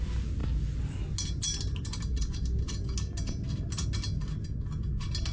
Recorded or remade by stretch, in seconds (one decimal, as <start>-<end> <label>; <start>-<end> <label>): 0.0-5.3 recorded